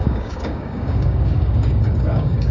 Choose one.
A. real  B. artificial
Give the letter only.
B